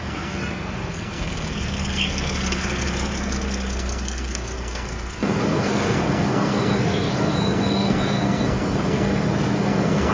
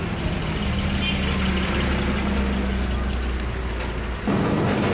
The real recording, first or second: second